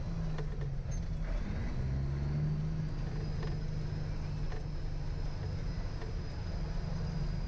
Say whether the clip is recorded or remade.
recorded